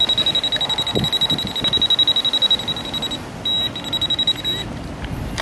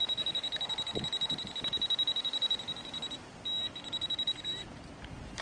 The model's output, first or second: second